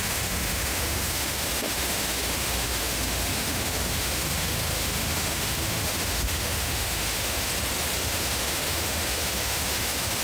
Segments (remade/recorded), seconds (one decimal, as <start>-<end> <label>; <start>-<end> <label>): 0.0-7.5 remade; 7.5-8.0 recorded; 8.0-10.2 remade